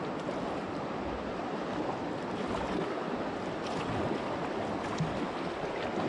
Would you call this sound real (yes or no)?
yes